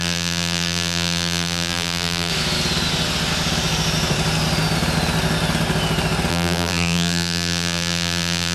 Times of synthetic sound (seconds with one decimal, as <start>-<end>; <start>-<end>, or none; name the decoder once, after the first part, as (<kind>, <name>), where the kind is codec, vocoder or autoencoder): 0.0-2.3 (vocoder, BigVGAN v2); 6.3-8.5